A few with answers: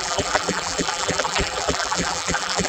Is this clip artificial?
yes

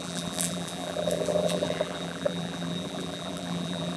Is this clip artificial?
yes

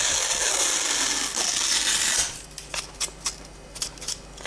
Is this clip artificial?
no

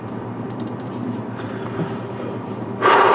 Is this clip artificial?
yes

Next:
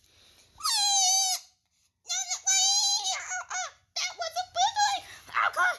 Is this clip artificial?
no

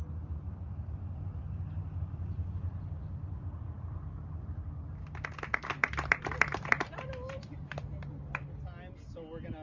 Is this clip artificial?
no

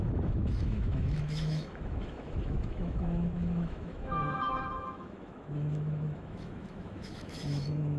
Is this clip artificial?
yes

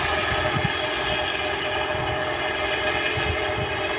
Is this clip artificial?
no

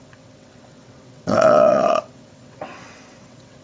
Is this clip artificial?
yes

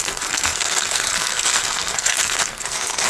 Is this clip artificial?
yes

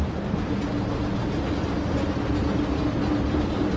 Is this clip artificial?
no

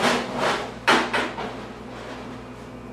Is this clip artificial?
no